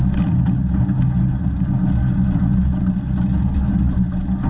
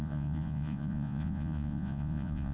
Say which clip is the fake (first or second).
second